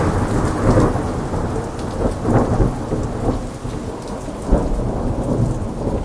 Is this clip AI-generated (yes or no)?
no